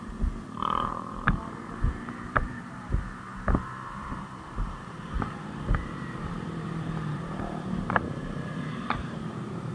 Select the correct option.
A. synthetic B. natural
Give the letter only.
A